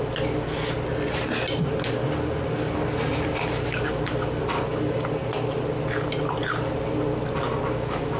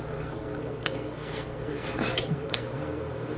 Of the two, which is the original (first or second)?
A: first